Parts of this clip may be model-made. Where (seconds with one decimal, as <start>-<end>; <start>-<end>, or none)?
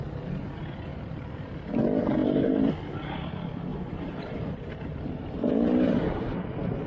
0.9-1.5; 2.2-2.7; 3.7-6.2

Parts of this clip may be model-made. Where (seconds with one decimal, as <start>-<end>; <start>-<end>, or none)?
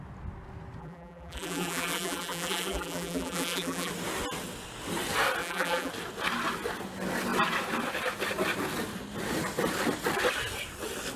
0.8-3.9; 5.4-5.9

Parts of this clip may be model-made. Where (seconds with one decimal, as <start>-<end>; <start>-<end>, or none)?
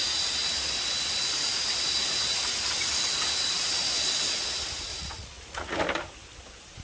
4.9-5.8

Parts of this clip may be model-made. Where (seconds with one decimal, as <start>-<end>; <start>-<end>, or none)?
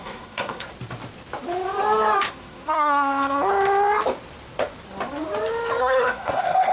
0.0-0.7; 2.3-3.5; 5.8-6.7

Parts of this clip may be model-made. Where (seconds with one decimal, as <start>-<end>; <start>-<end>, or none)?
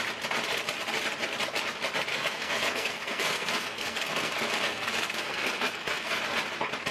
2.1-6.2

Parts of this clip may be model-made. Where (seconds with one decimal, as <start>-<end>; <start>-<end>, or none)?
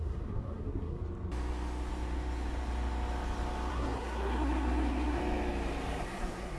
0.0-1.0; 3.7-5.2; 6.0-6.6